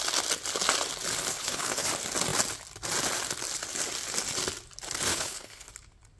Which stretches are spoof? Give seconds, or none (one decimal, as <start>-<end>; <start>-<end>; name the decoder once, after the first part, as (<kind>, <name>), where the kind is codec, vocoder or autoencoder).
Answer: 1.3-1.9 (codec, HILCodec); 5.1-5.7